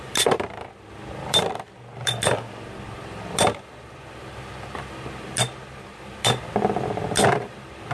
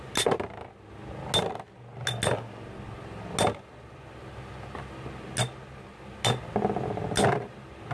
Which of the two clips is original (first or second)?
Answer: second